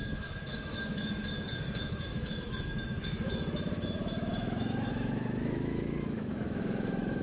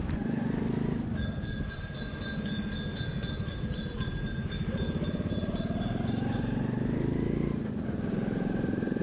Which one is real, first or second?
second